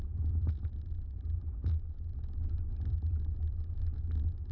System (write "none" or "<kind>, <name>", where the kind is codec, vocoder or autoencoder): none